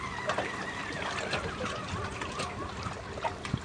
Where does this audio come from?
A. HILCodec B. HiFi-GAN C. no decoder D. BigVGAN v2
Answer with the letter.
C